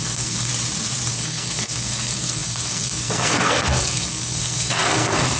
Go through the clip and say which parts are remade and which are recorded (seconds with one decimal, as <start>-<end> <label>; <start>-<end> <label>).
0.0-0.5 remade; 0.5-1.1 recorded; 1.1-5.4 remade